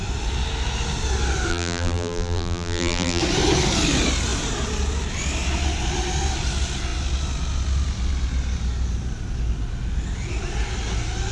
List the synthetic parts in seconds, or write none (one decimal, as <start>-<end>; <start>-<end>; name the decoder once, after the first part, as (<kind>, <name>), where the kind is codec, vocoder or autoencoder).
1.5-3.2 (vocoder, BigVGAN v2)